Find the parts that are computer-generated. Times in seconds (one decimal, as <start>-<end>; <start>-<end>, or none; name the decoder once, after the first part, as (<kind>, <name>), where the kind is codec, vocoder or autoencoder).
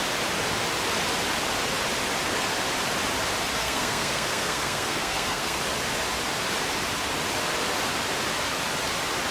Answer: 3.6-5.6 (codec, SNAC)